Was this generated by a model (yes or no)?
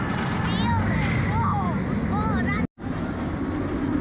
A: no